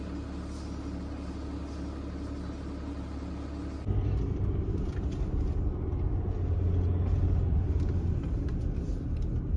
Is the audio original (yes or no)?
yes